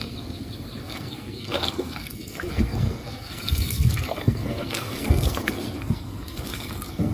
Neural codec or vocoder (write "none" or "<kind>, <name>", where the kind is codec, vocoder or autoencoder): codec, SNAC